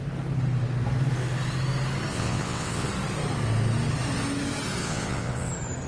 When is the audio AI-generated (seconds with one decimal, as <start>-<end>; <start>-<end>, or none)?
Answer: 2.1-2.9; 4.8-5.5